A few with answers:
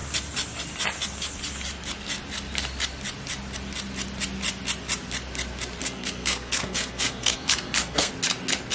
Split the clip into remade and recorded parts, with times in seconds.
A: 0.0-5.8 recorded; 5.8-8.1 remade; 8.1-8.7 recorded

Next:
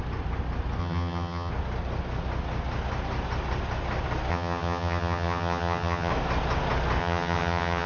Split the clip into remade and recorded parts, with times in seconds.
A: 0.0-0.8 recorded; 0.8-1.5 remade; 1.5-4.3 recorded; 4.3-6.1 remade; 6.1-7.0 recorded; 7.0-7.9 remade